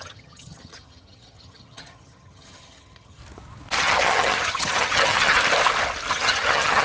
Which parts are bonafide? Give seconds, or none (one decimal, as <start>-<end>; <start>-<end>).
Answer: 3.2-3.8; 5.4-6.1